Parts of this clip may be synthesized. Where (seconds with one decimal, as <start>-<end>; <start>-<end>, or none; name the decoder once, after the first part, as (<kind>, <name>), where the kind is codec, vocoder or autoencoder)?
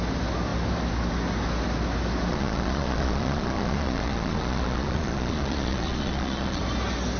2.3-6.6 (vocoder, Vocos)